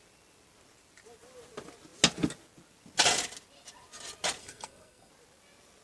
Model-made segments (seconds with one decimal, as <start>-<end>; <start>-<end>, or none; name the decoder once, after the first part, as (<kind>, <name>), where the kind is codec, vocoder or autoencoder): 4.4-5.1 (codec, SNAC)